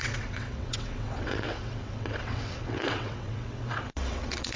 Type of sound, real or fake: fake